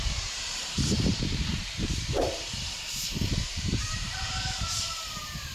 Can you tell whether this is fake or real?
fake